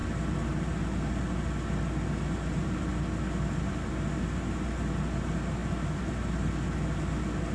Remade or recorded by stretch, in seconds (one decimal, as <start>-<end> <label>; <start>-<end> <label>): 0.0-7.5 recorded